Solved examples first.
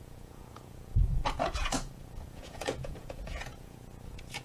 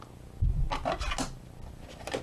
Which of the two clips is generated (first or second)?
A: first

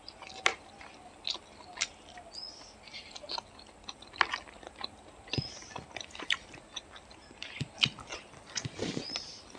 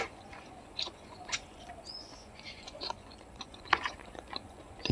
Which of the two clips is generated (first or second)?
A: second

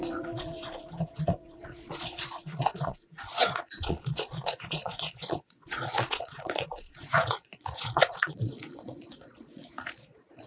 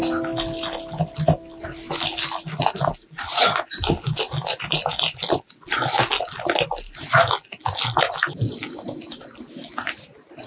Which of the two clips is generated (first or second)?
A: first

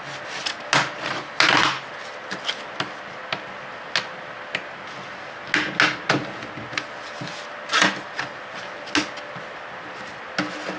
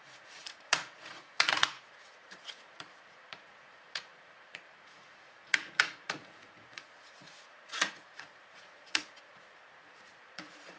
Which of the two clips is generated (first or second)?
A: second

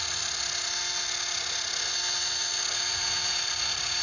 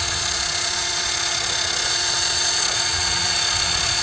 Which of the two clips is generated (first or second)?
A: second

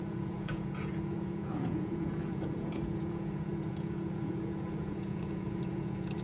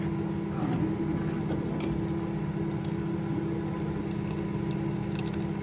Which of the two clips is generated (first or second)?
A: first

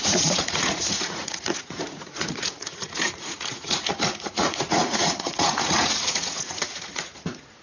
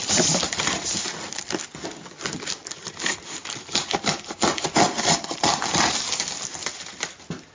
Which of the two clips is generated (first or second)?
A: first